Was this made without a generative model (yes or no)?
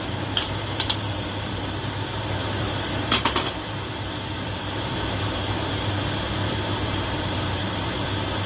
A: no